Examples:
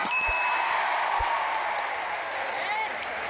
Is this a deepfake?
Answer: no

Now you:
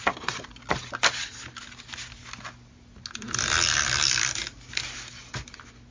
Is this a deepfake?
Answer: no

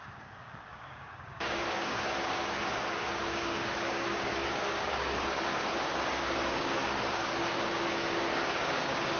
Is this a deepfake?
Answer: yes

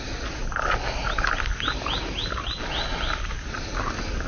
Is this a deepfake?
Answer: no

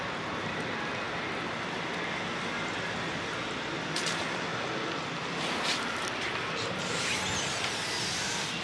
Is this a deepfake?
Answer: no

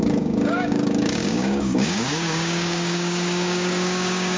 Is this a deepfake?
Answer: yes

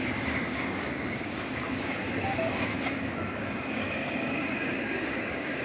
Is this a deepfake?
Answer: yes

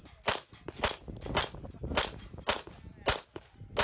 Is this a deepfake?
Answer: no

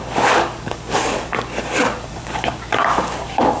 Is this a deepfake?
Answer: yes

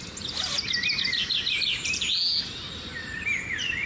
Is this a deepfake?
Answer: no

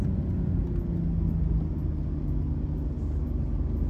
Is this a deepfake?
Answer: no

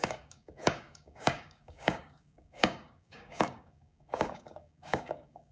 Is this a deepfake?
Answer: yes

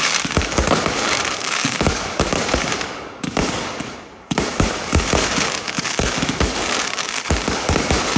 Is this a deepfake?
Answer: yes